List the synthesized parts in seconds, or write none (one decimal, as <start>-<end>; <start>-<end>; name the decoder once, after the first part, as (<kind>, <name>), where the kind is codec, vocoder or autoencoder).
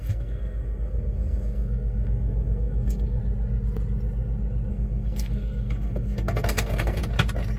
0.0-3.2 (codec, SNAC); 4.7-7.0